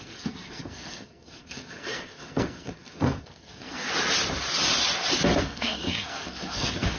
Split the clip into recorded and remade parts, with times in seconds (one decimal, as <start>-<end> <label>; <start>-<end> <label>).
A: 0.0-3.9 remade; 3.9-5.4 recorded; 5.4-7.0 remade